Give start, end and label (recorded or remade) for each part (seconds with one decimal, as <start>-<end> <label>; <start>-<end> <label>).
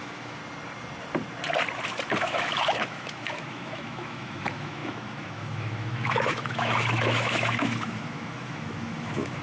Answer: 0.0-0.4 remade; 0.4-2.2 recorded; 2.2-9.4 remade